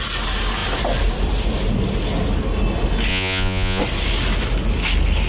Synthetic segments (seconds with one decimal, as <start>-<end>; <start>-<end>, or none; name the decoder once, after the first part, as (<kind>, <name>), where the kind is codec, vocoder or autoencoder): 3.1-3.8 (vocoder, Vocos)